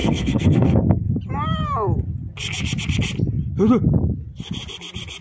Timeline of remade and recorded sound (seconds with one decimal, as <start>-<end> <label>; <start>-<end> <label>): 0.0-1.2 remade; 1.2-5.2 recorded